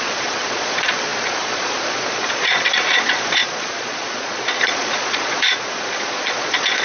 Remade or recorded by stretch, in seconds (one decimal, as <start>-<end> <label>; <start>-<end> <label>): 0.0-6.8 remade